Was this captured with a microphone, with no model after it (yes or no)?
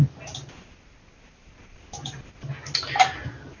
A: yes